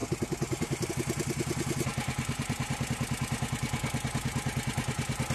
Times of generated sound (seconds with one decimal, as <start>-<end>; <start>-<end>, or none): 1.9-2.9